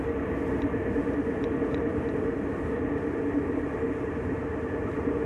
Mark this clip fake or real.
real